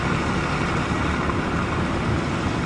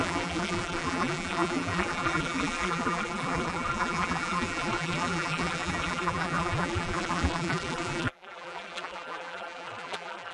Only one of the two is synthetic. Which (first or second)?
second